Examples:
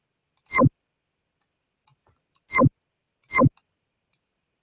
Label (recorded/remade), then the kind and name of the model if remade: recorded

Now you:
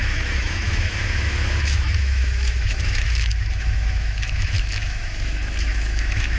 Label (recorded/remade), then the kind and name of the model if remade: remade, autoencoder, DAC-VAE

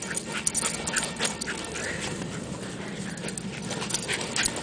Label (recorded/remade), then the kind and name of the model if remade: recorded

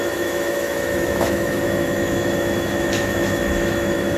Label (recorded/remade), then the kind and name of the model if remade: remade, autoencoder, DAC-VAE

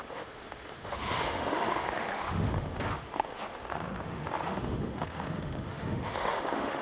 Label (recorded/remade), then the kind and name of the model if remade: remade, autoencoder, DAC-VAE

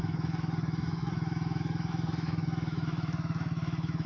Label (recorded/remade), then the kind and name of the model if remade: remade, autoencoder, DAC-VAE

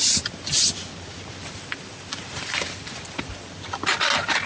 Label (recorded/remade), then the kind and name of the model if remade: recorded